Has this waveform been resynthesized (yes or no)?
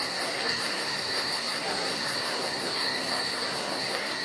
yes